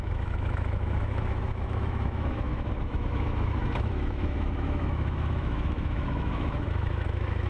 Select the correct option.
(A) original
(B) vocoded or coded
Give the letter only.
B